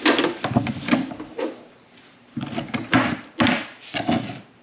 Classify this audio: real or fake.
real